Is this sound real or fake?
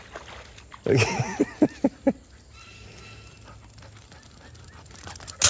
real